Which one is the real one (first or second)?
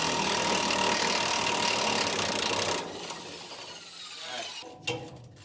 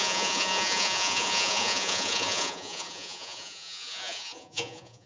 first